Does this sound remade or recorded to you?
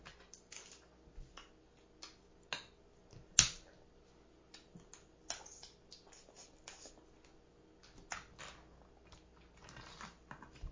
recorded